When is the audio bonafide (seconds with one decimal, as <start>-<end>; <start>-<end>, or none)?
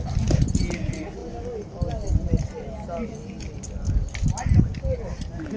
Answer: 0.0-5.6